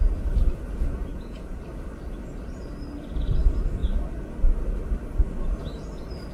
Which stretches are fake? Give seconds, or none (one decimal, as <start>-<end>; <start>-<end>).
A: 1.1-1.6